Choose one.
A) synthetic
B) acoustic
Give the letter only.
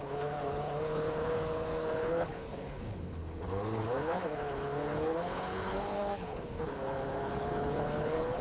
A